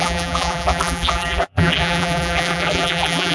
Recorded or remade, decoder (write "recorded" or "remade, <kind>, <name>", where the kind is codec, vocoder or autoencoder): remade, vocoder, BigVGAN v2